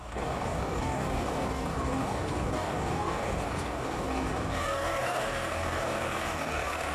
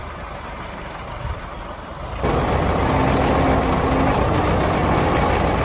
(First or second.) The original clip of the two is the second